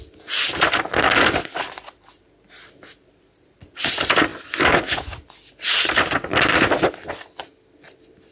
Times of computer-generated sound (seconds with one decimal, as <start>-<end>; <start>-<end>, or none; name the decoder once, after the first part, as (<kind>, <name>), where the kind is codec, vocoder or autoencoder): none